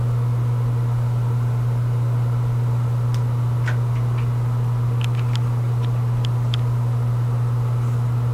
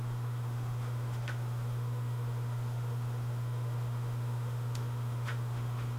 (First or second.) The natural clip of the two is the first